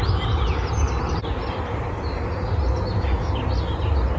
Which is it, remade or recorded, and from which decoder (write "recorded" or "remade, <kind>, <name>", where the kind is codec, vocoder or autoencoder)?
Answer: recorded